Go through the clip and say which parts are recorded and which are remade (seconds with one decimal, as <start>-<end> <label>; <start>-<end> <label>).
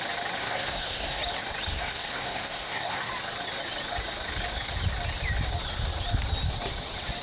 0.0-0.4 recorded; 0.4-1.2 remade; 1.2-1.7 recorded; 1.7-3.1 remade; 3.1-7.2 recorded